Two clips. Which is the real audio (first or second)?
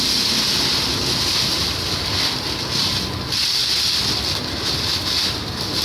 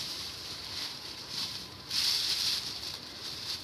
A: first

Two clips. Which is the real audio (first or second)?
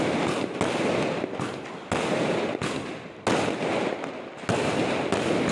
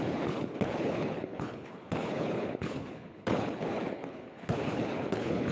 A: first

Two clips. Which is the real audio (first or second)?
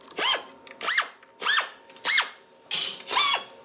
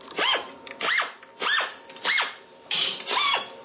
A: first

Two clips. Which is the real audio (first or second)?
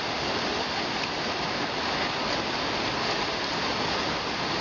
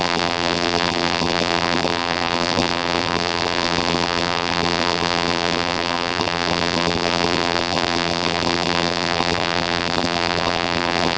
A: first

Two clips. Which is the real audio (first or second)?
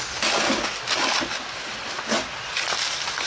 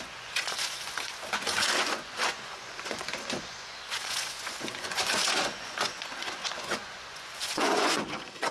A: first